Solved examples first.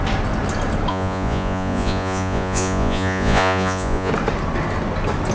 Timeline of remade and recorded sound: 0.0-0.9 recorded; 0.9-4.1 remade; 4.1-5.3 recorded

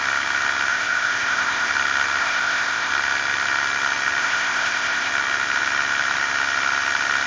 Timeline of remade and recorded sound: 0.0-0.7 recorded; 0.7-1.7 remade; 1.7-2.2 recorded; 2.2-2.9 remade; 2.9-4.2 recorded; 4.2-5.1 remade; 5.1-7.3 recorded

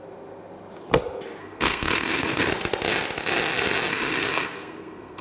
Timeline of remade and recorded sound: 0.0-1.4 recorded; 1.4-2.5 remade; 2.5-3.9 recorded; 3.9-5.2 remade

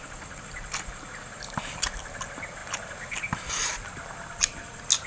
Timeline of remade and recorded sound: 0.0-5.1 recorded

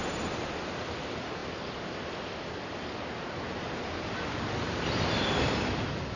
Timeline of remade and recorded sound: 0.0-6.2 recorded

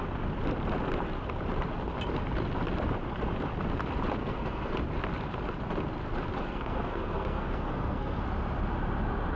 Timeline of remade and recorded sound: 0.0-4.2 recorded; 4.2-4.7 remade; 4.7-6.4 recorded; 6.4-8.2 remade; 8.2-9.4 recorded

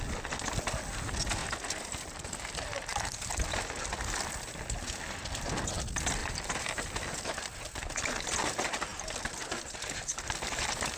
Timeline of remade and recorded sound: 0.0-6.2 recorded; 6.2-6.8 remade; 6.8-11.0 recorded